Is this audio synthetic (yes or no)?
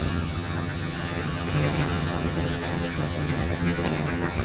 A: yes